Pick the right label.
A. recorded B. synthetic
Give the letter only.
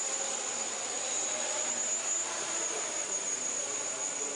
A